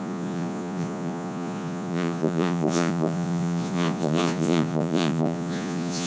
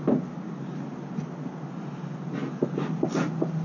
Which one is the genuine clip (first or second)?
second